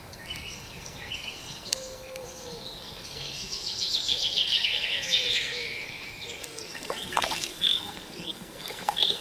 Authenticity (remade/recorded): remade